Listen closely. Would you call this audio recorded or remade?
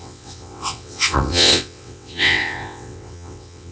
remade